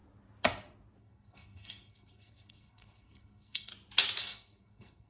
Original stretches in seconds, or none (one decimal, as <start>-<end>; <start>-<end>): 0.0-1.0; 3.7-4.2